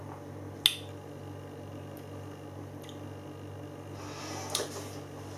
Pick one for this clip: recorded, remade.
recorded